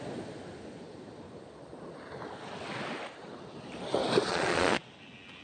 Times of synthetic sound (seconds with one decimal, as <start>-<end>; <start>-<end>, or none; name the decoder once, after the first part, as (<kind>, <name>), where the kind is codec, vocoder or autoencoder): 4.3-4.8 (vocoder, Vocos)